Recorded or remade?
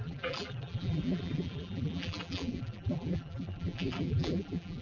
remade